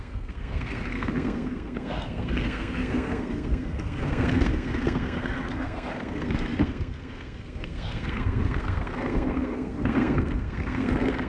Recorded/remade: remade